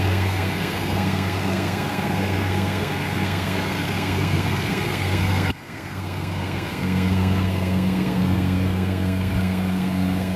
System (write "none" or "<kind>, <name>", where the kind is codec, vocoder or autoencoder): codec, SNAC